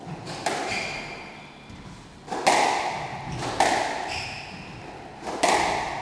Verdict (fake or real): real